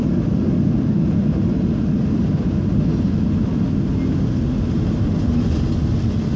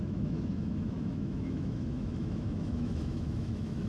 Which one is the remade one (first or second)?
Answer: second